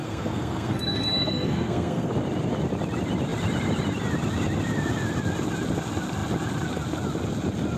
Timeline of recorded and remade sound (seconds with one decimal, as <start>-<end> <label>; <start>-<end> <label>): 0.0-2.1 remade; 2.1-7.8 recorded